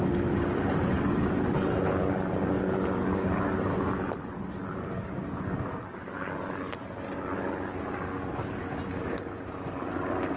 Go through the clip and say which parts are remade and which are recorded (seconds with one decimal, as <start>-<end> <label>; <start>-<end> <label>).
0.0-10.4 recorded